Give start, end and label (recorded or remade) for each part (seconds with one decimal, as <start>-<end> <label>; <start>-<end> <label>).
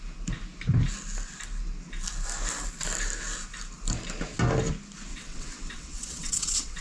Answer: 0.0-5.1 recorded; 5.1-6.8 remade